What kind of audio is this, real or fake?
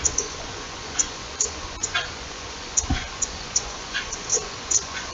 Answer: fake